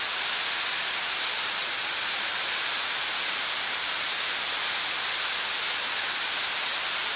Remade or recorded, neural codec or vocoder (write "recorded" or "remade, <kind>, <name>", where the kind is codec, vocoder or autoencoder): remade, vocoder, BigVGAN v2